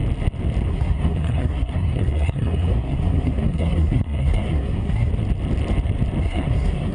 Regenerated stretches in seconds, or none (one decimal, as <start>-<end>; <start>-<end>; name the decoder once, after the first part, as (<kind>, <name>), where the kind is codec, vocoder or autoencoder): 0.7-5.1 (codec, SNAC); 6.2-6.9